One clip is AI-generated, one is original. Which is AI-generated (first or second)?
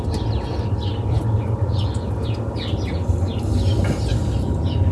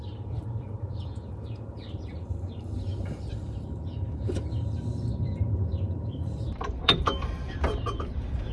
second